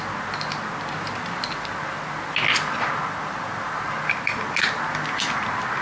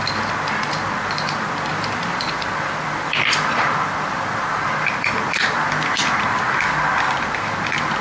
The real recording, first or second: first